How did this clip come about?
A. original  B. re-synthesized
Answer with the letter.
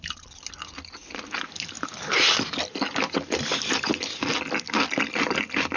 A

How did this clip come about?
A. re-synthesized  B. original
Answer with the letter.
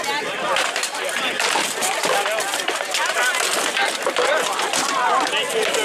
B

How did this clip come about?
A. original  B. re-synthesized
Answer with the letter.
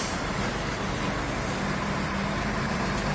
A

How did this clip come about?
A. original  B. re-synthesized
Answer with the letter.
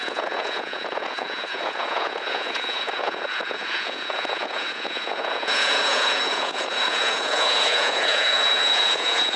B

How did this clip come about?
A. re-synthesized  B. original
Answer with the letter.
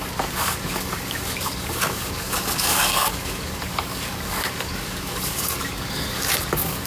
A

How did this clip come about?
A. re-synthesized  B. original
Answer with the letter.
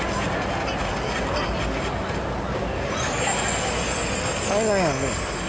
B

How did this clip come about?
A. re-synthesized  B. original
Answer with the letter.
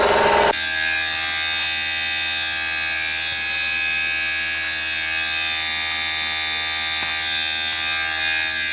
B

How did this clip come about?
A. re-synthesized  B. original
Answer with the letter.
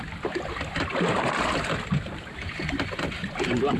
B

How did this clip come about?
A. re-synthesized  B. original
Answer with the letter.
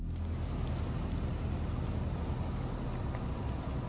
B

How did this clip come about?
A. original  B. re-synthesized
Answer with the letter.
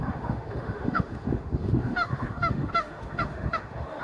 B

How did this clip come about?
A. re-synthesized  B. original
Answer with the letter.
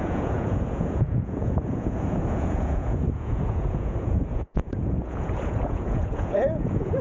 A